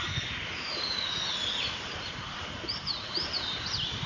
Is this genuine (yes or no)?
yes